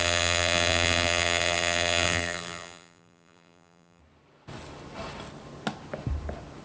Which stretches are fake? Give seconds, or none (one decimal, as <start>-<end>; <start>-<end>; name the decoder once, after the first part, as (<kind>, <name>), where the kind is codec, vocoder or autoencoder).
0.0-4.0 (vocoder, BigVGAN v2)